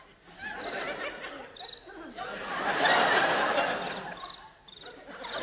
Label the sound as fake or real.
real